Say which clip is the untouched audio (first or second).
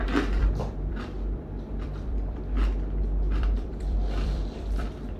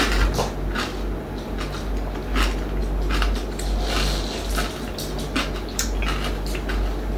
second